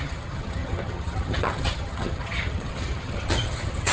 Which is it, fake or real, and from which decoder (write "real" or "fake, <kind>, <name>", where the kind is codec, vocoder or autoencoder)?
fake, vocoder, HiFi-GAN